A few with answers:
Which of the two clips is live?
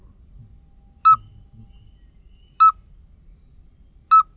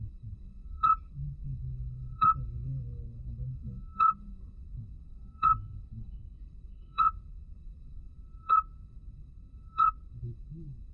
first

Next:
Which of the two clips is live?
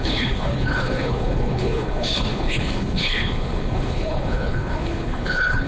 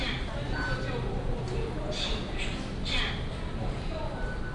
second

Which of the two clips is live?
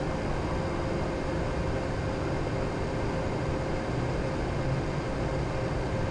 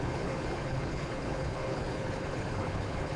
first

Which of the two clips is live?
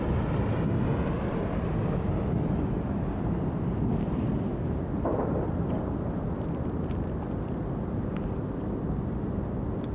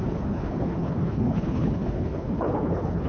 first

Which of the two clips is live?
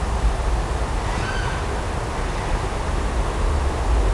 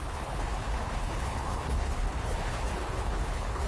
first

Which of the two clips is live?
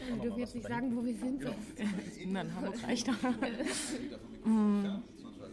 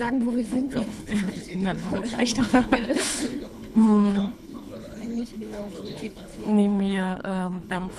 first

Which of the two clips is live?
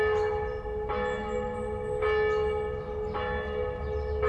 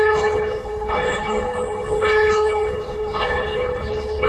first